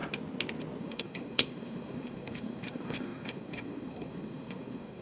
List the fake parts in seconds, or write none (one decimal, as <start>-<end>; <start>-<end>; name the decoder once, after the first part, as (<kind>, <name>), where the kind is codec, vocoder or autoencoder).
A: 0.8-5.0 (codec, SNAC)